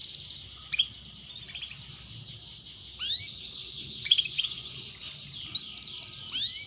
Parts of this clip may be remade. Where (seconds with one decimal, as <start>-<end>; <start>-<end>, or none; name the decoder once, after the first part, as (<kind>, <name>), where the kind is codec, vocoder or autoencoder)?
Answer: 3.6-4.8 (vocoder, Vocos)